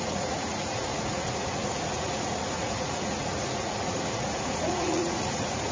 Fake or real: fake